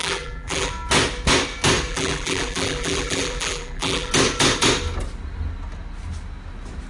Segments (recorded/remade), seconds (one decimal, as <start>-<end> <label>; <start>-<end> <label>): 0.0-0.7 remade; 0.7-1.9 recorded; 1.9-4.1 remade; 4.1-6.9 recorded